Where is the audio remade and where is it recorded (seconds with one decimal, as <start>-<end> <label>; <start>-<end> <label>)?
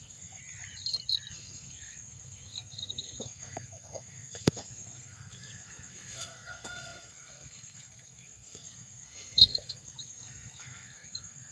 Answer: 0.0-0.4 remade; 0.4-1.3 recorded; 1.3-11.5 remade